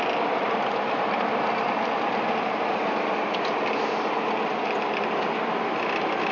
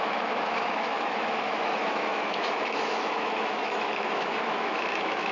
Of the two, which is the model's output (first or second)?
second